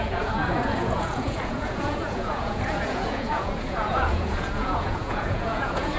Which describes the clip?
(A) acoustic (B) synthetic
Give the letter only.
B